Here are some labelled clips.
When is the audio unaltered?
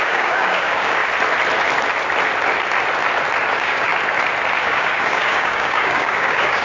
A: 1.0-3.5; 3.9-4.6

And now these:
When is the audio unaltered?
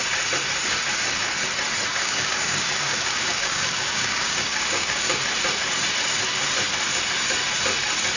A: 0.0-1.9; 5.2-8.2